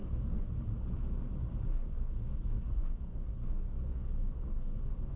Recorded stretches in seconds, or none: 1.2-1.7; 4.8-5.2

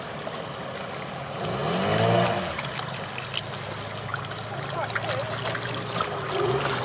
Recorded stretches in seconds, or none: 0.0-6.8

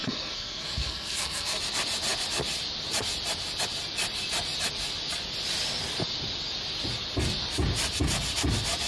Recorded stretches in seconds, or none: 1.6-8.9

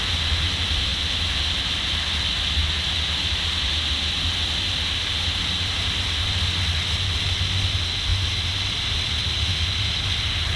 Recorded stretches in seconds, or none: 0.0-10.6

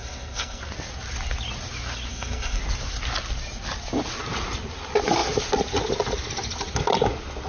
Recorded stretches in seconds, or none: 0.6-2.1; 2.6-7.5

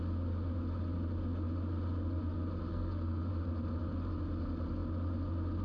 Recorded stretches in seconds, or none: 0.0-2.7; 3.3-5.6

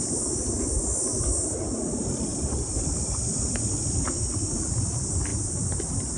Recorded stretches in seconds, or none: 0.0-6.2

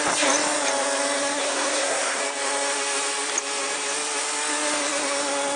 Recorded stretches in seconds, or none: 0.0-1.2; 2.2-5.6